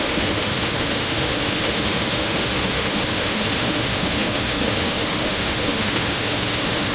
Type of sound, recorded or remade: remade